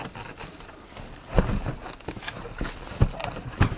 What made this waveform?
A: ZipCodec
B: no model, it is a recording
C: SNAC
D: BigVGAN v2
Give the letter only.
B